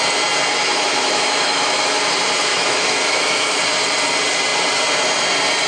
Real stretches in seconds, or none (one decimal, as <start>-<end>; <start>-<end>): 0.0-0.5; 2.0-2.5; 3.6-5.7

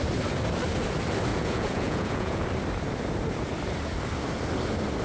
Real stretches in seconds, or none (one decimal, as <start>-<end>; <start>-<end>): 0.0-1.3; 2.4-5.0

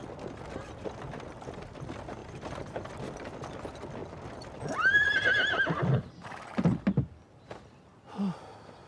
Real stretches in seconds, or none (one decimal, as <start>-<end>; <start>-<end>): 0.0-2.2; 2.9-8.9

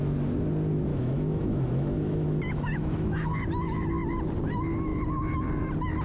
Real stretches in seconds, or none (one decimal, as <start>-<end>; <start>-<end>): 0.0-0.9; 3.9-6.0

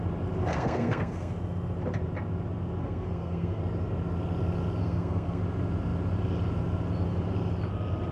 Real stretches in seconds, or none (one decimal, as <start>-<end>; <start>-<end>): 0.0-0.5; 1.3-2.8; 3.6-4.8; 5.4-8.1

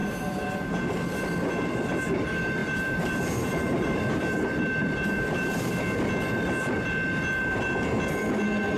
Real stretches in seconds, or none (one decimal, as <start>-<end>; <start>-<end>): 0.7-2.6; 5.7-8.8

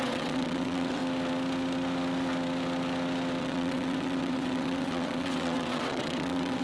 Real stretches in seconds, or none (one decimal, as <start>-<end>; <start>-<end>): 1.0-3.4